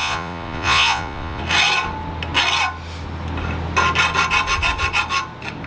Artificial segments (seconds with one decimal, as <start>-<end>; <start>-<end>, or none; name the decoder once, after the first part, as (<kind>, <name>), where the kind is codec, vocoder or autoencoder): 0.0-1.4 (vocoder, Vocos)